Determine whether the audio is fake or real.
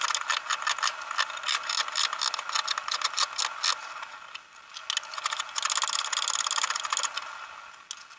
real